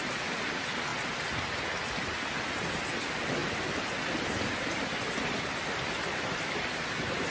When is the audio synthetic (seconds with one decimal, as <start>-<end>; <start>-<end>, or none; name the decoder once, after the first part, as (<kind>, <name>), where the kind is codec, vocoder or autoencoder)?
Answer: none